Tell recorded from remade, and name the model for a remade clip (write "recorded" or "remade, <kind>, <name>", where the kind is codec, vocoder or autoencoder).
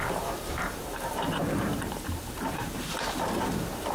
remade, vocoder, BigVGAN v2